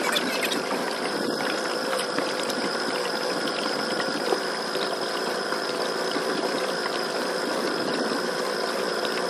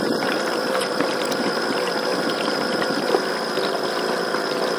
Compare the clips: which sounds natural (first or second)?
second